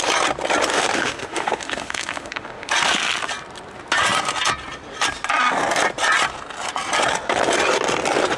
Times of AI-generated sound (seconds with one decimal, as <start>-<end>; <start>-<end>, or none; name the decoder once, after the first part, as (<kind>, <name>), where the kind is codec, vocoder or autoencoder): 0.7-2.7 (autoencoder, DAC-VAE)